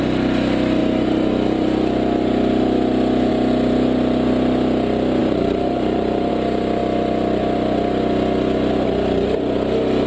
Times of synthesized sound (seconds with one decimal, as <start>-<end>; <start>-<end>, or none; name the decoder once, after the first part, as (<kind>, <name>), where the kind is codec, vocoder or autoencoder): 5.2-6.3 (vocoder, BigVGAN v2)